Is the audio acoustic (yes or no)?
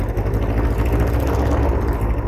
yes